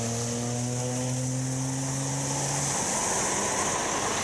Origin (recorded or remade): recorded